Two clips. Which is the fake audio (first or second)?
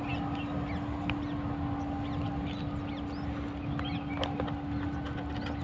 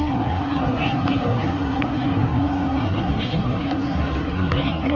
second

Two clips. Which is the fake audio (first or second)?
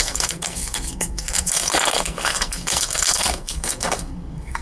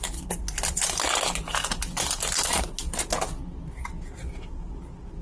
first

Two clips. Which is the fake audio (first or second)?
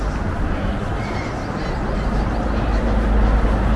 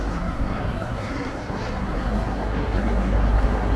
second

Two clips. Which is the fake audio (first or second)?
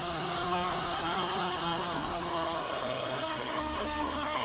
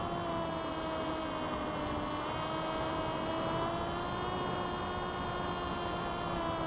first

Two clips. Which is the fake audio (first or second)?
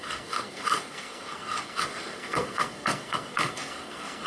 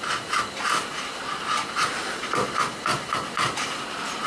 first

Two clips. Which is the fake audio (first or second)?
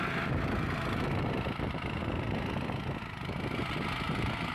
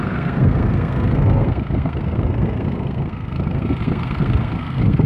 second